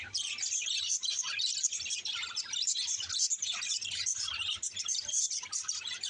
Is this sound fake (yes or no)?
yes